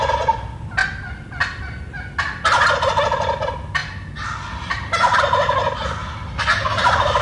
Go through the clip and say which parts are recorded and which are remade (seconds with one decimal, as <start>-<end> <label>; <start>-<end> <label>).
0.0-0.8 remade; 0.8-3.0 recorded; 3.0-6.0 remade; 6.0-6.7 recorded; 6.7-7.2 remade